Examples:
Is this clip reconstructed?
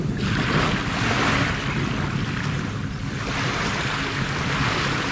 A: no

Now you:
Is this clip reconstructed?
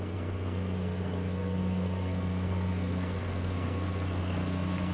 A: yes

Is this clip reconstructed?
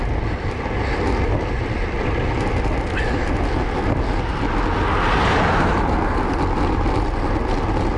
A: no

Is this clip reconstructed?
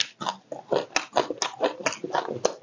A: no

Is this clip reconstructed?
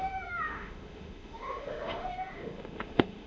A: yes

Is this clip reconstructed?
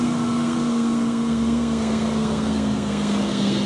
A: yes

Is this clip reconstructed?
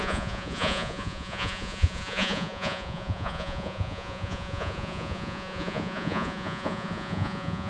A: yes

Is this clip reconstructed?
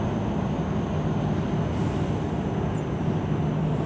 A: no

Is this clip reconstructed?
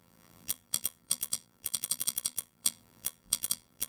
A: yes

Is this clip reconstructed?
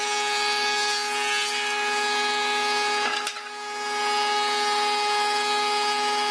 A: no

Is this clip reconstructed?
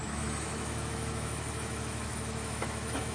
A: yes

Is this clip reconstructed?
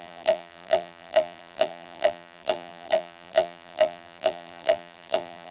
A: yes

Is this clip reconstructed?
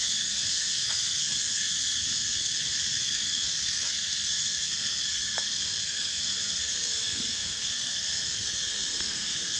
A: yes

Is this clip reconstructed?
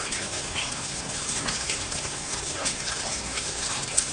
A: yes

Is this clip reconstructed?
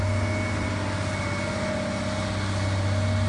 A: no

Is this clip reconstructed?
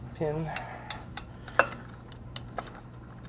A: no